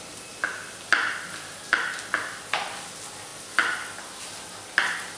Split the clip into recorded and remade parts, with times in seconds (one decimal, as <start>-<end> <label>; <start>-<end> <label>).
0.0-5.2 recorded